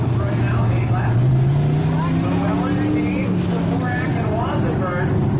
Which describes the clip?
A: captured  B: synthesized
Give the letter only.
A